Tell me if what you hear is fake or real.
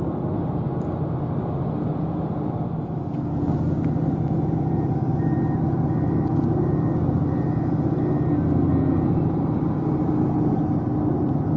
real